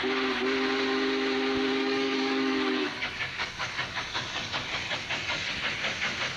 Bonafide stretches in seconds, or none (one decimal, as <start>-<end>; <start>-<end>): 0.0-1.8; 5.5-6.4

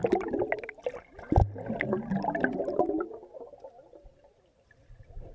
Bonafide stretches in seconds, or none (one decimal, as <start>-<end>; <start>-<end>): 0.0-5.3